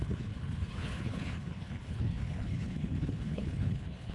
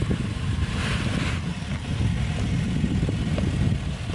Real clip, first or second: second